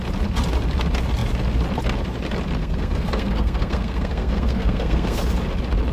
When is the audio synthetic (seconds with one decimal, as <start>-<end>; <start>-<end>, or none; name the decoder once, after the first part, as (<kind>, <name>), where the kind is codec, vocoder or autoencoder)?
2.6-5.2 (codec, SNAC)

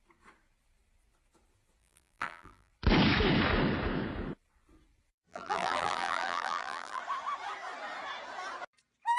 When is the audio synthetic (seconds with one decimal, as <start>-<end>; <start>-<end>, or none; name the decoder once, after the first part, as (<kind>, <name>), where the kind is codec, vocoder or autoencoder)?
1.8-2.7 (vocoder, BigVGAN v2); 5.3-7.0

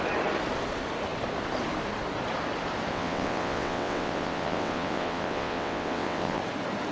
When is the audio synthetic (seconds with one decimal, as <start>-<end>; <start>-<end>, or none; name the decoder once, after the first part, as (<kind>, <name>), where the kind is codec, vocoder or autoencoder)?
2.9-6.4 (vocoder, WaveNeXt)

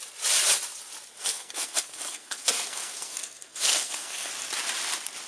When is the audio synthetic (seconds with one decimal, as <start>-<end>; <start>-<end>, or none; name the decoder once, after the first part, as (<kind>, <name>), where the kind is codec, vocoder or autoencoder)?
1.2-4.3 (codec, SNAC)

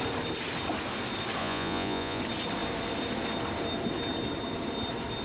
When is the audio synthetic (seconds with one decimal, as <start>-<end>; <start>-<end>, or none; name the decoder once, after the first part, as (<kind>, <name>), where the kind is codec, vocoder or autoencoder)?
1.4-2.2 (vocoder, Vocos)

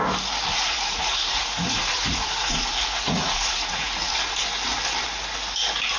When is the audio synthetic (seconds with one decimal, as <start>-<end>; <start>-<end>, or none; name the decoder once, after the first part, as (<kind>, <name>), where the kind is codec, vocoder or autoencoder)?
0.5-4.1 (vocoder, Vocos)